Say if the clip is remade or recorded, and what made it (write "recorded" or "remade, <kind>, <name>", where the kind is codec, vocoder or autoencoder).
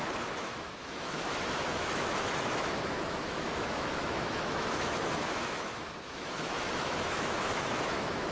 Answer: remade, autoencoder, DAC-VAE